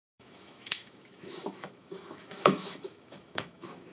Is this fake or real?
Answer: fake